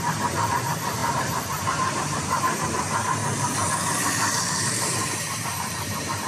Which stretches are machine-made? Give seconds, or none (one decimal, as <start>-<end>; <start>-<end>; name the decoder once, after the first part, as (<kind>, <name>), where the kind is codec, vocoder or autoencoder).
0.0-3.2 (vocoder, BigVGAN v2); 4.6-6.3